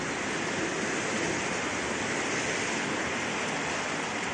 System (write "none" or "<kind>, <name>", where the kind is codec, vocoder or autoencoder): none